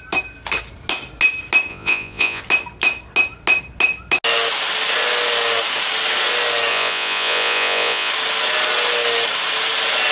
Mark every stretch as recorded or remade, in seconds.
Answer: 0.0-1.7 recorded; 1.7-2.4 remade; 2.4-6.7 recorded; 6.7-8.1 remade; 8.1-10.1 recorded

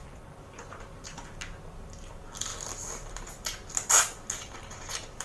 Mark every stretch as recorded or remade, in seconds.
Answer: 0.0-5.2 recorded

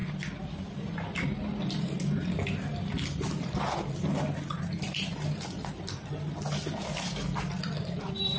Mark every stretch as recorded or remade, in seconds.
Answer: 0.0-8.4 recorded